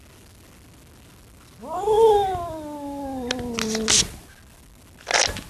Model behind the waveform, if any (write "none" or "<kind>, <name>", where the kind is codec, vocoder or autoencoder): none